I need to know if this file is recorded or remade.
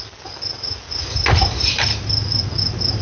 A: recorded